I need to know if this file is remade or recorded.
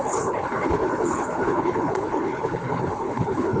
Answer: remade